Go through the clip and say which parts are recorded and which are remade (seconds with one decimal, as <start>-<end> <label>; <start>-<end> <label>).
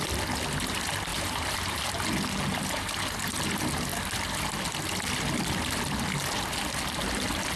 0.0-1.1 recorded; 1.1-1.8 remade; 1.8-7.6 recorded